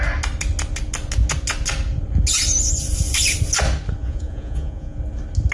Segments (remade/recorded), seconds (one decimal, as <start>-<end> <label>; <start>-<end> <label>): 0.0-4.0 recorded; 4.0-5.0 remade; 5.0-5.5 recorded